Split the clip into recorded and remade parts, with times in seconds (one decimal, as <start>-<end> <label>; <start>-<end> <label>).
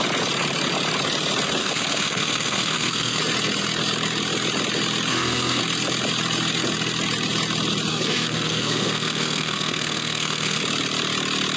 0.0-1.6 recorded; 1.6-3.2 remade; 3.2-5.1 recorded; 5.1-5.6 remade; 5.6-7.9 recorded; 7.9-10.6 remade; 10.6-11.6 recorded